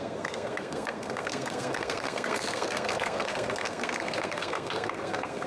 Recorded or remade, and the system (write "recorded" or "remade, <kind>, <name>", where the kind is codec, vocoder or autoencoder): remade, codec, SNAC